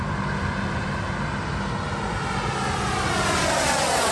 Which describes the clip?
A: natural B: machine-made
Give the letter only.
A